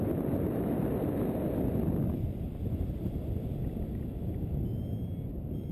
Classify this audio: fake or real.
real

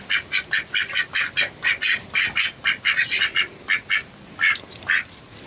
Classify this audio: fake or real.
real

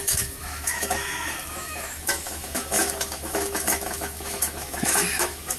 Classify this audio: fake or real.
fake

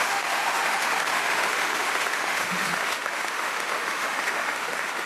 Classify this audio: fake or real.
fake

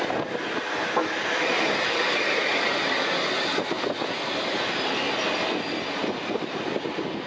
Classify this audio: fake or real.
real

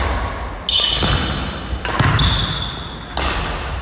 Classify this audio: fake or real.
real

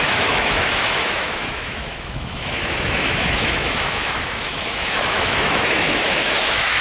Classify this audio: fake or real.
fake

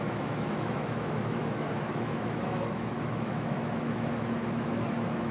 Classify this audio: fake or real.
fake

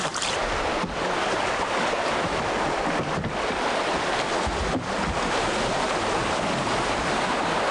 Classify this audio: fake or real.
real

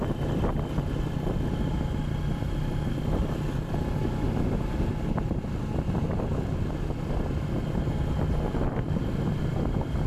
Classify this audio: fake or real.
real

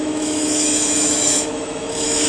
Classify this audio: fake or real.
fake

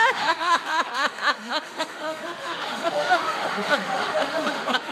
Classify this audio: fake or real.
fake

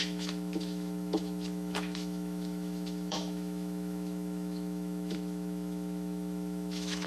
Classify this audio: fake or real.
fake